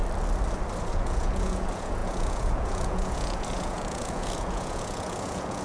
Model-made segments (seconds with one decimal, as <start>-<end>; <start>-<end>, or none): 0.9-5.6